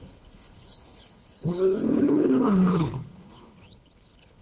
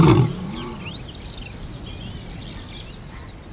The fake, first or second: first